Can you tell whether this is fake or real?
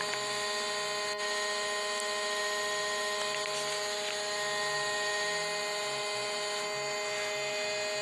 real